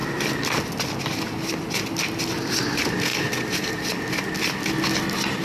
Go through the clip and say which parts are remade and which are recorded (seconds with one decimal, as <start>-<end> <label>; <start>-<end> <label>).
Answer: 0.0-5.4 recorded